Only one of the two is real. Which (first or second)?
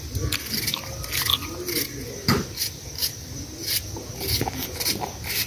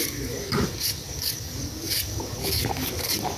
first